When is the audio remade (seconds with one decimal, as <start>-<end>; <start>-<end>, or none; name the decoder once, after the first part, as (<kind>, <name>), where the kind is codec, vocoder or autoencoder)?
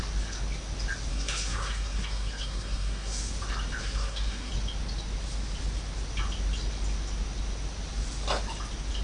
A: 1.1-3.3 (codec, SNAC); 3.8-4.5